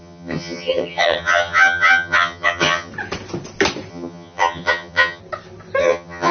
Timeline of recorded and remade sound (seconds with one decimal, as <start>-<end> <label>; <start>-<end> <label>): 0.0-2.9 remade; 2.9-3.9 recorded; 3.9-5.2 remade; 5.2-5.8 recorded; 5.8-6.3 remade